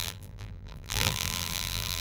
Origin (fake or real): fake